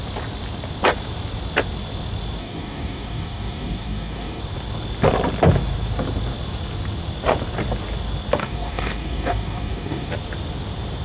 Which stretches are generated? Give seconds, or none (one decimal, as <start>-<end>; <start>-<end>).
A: 2.4-4.4; 8.4-10.1